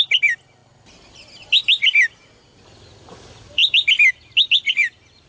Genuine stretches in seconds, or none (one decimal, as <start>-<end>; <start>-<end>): 0.0-5.3